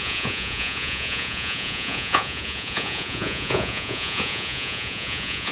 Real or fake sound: fake